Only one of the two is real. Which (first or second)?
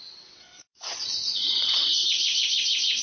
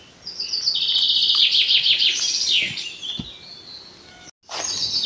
second